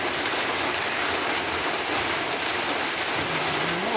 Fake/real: real